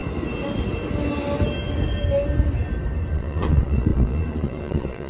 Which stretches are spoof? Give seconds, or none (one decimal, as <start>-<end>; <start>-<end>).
3.1-5.1